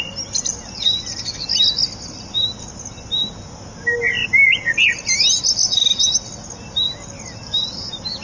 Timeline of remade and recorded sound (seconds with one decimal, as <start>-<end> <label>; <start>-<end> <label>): 0.0-8.2 recorded